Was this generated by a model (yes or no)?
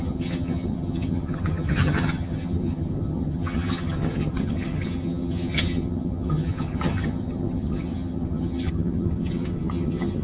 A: yes